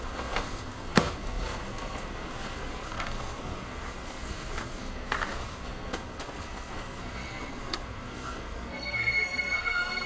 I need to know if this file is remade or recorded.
remade